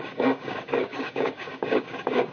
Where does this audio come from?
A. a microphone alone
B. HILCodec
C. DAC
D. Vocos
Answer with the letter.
C